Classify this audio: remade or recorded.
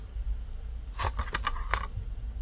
recorded